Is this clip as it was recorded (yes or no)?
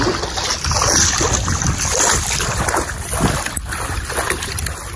yes